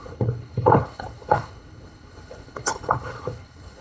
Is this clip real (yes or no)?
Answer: no